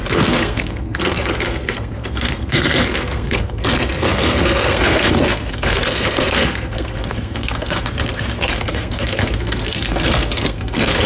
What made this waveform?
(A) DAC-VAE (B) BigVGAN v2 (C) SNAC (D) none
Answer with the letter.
C